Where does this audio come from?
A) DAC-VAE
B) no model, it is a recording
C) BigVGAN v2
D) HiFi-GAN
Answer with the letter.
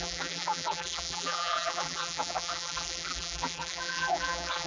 C